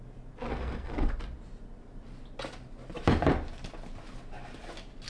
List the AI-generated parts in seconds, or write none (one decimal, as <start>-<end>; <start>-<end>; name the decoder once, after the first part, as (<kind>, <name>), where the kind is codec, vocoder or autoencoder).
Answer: 0.5-1.1 (codec, SNAC)